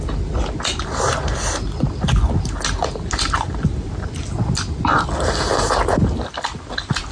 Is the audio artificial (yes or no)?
no